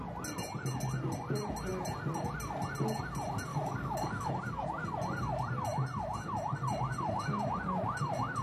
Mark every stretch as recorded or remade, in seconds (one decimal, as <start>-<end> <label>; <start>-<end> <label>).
0.0-3.5 recorded; 3.5-4.3 remade; 4.3-8.4 recorded